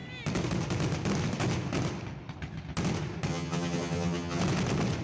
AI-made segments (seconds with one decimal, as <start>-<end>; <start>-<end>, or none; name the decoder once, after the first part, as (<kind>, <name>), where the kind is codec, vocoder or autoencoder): 3.3-4.4 (vocoder, HiFi-GAN)